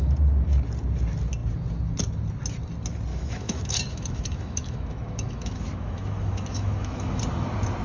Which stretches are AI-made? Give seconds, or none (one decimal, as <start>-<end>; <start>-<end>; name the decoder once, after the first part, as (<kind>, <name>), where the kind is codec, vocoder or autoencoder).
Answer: 3.1-7.2 (autoencoder, DAC-VAE)